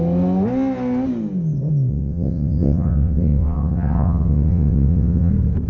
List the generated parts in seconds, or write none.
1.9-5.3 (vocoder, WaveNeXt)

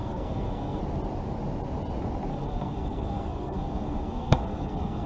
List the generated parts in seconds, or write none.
0.0-0.8 (codec, SNAC); 2.3-5.1

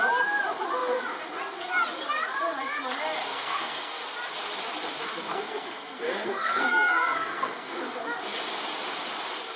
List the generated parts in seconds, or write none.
3.3-4.0 (codec, SNAC); 5.3-7.8